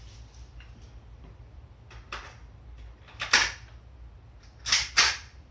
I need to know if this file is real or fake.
real